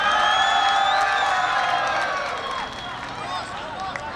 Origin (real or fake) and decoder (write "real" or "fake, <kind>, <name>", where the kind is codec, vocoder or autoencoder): real